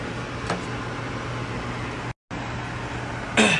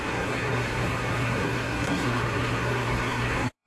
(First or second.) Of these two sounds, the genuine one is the first